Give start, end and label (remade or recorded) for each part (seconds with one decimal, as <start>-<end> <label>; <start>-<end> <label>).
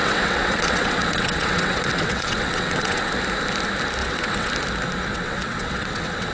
0.0-3.1 remade; 3.1-4.0 recorded; 4.0-4.5 remade; 4.5-5.1 recorded; 5.1-6.3 remade